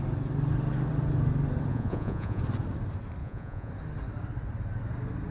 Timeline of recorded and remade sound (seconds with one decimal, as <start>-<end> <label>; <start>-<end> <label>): 0.0-1.7 recorded; 1.7-2.4 remade; 2.4-3.2 recorded; 3.2-3.7 remade; 3.7-5.3 recorded